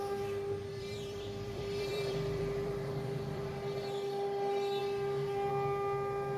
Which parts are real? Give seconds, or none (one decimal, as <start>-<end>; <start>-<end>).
0.0-0.7; 3.5-6.4